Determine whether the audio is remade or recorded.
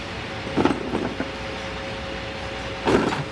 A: recorded